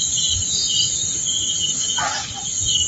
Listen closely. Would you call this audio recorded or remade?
recorded